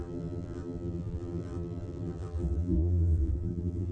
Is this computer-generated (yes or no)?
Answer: yes